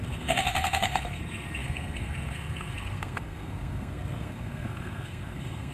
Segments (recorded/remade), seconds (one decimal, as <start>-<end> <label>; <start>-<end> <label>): 0.0-5.7 remade